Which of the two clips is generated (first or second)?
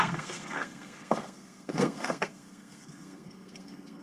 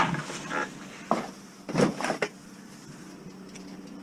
first